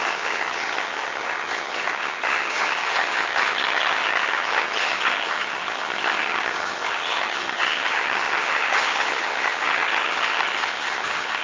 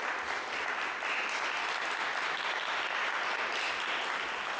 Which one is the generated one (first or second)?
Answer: first